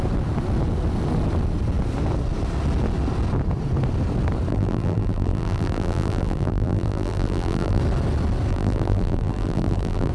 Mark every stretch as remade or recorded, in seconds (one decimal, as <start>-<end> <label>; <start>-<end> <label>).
0.0-4.5 recorded; 4.5-7.8 remade; 7.8-8.5 recorded; 8.5-10.1 remade